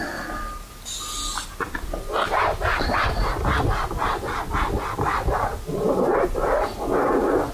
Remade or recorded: recorded